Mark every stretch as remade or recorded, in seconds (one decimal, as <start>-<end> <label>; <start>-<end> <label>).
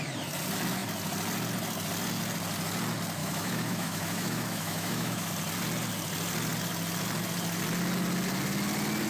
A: 0.0-3.2 recorded; 3.2-5.3 remade; 5.3-9.1 recorded